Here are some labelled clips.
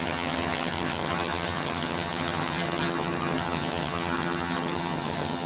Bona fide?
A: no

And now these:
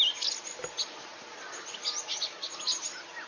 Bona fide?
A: yes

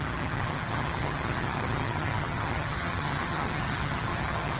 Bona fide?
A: no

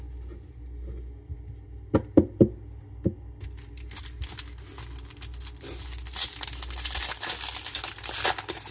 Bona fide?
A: yes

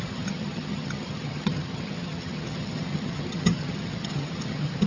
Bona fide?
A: no